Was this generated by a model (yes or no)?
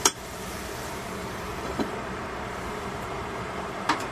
yes